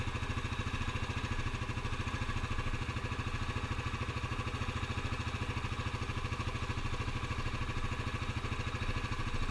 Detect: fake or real real